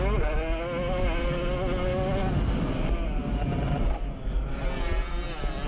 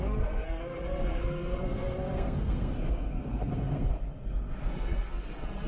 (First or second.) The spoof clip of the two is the second